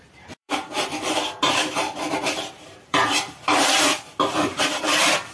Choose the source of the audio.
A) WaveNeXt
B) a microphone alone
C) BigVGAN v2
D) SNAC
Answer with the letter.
C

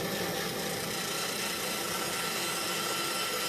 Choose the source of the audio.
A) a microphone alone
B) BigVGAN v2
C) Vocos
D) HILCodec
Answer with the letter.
A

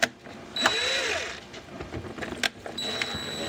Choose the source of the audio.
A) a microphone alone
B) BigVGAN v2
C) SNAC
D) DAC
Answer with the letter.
A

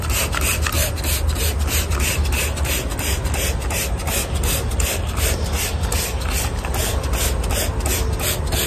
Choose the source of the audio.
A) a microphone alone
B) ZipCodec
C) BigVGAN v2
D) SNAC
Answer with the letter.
A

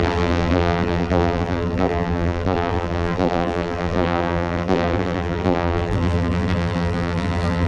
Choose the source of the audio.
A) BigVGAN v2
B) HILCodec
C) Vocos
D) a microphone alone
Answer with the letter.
A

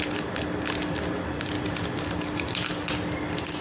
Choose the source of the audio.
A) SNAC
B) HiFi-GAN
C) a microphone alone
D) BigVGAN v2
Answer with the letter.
C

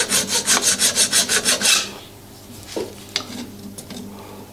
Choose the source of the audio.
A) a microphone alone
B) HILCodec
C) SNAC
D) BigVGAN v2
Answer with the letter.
A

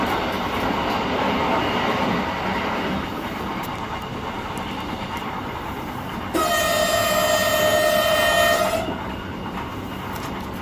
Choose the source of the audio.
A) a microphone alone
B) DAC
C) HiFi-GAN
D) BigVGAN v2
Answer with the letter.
A